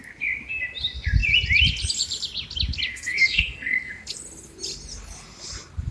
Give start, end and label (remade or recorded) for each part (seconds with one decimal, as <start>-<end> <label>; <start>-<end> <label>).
0.0-2.9 recorded; 2.9-3.9 remade; 3.9-5.9 recorded